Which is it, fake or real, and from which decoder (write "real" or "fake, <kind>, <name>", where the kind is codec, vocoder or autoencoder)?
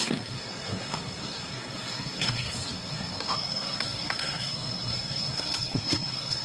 fake, codec, SNAC